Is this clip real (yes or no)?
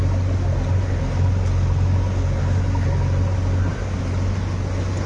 yes